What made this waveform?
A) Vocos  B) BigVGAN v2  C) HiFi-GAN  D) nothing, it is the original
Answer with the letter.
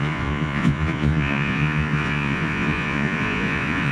A